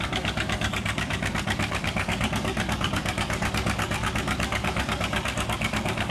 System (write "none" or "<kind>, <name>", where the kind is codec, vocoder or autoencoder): codec, DAC